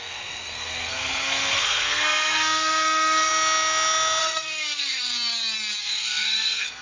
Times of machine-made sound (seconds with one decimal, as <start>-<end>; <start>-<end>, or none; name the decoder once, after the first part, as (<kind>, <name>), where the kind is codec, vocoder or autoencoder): 0.0-3.3 (codec, SNAC); 4.2-5.1; 5.8-6.8